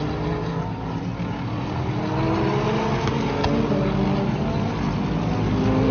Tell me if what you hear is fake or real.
real